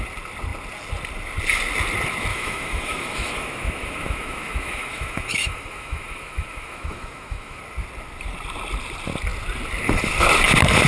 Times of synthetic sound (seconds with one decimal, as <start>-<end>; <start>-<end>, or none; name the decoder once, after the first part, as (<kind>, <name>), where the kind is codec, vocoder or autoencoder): 2.3-7.6 (autoencoder, DAC-VAE)

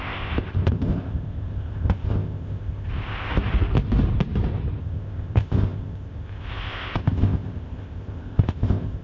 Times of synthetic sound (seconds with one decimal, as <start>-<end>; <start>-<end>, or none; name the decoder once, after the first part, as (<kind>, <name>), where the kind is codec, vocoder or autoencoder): 0.0-3.3 (codec, ZipCodec); 4.8-9.0

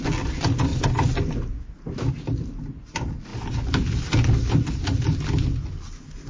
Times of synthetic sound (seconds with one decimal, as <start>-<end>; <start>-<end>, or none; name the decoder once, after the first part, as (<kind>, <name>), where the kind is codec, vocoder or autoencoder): none

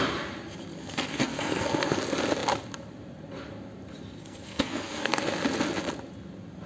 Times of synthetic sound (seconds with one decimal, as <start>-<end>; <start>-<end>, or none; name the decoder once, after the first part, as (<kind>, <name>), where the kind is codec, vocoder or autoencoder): 0.7-2.0 (codec, SNAC); 4.2-5.2

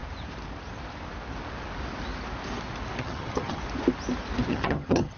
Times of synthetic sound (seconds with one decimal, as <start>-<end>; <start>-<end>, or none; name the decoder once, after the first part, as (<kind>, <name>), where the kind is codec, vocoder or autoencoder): 3.0-3.6 (vocoder, HiFi-GAN); 4.5-5.2